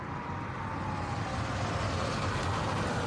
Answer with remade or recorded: recorded